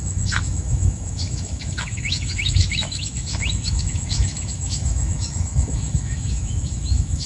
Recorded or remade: remade